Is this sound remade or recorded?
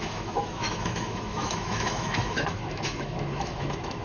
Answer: remade